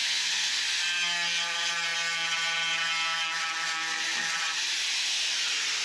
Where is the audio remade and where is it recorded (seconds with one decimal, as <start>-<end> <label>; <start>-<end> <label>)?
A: 0.0-0.6 remade; 0.6-5.8 recorded